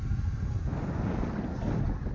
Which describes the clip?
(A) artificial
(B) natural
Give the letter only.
B